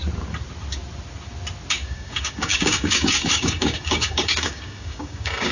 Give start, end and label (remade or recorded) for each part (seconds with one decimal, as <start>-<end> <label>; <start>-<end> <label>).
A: 0.0-1.7 recorded; 1.7-5.5 remade